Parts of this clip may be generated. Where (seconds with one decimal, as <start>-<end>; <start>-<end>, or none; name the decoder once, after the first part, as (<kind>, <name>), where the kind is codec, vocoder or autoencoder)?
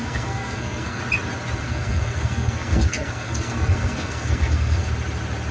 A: 0.0-1.0 (codec, SNAC); 1.6-4.9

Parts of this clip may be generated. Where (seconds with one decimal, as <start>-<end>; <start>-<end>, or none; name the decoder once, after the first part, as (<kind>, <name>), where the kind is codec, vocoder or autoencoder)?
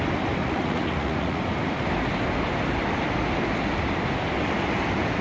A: 0.4-1.4 (vocoder, Vocos)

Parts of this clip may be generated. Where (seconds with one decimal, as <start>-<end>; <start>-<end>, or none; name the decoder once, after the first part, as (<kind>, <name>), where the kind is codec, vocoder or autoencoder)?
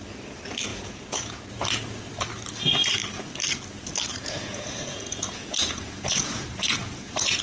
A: 0.7-1.4 (vocoder, Vocos); 4.1-7.4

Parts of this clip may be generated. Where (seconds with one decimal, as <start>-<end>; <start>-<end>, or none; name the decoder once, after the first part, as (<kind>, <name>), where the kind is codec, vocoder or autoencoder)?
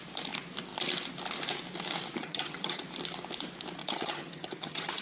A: 2.2-2.8 (vocoder, HiFi-GAN); 3.8-5.0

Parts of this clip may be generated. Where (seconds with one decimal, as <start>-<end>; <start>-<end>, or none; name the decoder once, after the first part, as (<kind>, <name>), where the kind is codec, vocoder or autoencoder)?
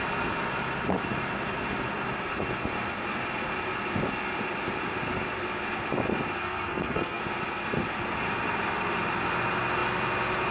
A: 6.4-7.2 (codec, SNAC)